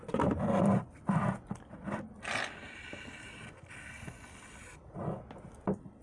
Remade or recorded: recorded